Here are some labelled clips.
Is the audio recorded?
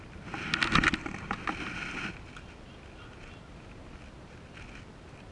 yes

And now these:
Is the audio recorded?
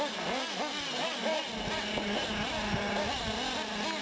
yes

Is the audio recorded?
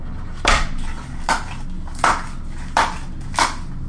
yes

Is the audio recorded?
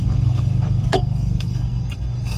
no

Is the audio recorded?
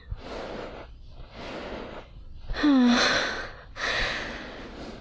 yes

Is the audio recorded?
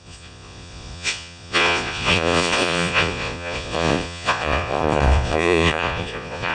no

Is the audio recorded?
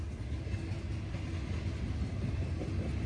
yes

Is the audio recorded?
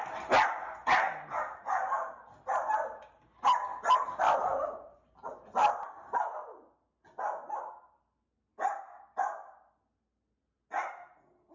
yes